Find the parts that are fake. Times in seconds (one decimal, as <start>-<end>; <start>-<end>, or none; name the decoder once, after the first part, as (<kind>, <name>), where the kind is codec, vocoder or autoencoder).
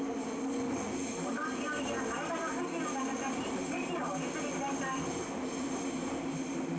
none